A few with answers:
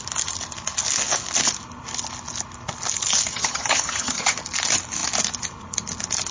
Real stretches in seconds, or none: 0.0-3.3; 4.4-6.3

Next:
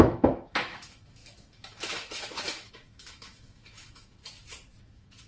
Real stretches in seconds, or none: 4.2-4.8

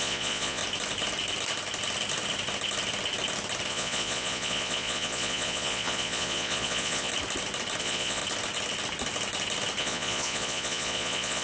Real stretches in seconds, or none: 0.6-3.7; 7.1-7.8; 8.2-9.8